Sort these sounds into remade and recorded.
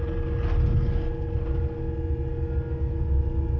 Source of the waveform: recorded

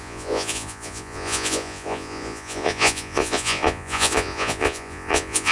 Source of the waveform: remade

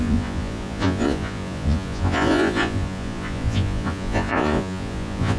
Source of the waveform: remade